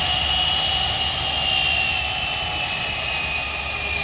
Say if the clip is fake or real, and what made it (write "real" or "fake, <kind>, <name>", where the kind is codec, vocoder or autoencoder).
real